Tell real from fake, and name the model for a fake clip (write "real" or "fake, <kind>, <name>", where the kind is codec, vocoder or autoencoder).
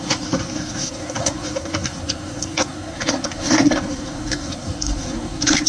fake, codec, SNAC